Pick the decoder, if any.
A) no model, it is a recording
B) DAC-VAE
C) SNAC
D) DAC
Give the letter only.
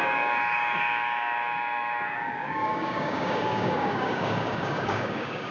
D